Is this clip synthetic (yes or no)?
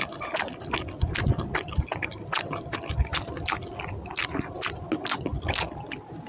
no